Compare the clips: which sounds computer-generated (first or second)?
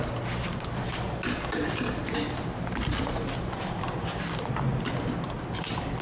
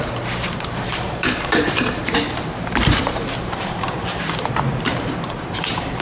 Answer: second